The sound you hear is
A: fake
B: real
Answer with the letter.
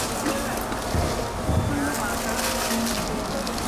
B